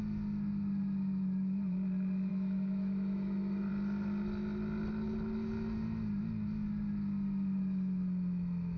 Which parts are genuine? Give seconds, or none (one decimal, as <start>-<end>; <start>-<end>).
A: 0.0-2.3; 3.7-8.8

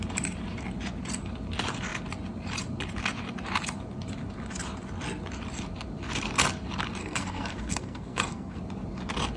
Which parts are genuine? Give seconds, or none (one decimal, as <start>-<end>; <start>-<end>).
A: 0.0-7.0; 8.6-9.4

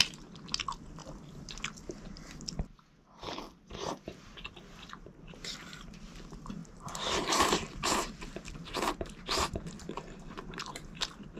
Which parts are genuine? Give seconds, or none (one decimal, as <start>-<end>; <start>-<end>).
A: 0.0-6.6; 10.7-11.4

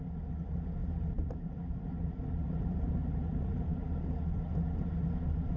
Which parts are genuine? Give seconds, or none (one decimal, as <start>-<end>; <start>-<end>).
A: 0.0-0.8; 3.7-5.6

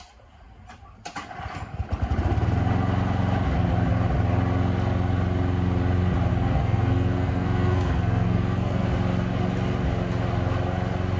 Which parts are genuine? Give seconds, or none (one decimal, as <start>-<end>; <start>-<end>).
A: 0.0-6.3; 8.9-11.2

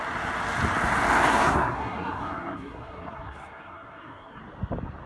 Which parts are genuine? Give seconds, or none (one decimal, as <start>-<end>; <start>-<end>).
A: 0.0-1.3; 4.4-5.1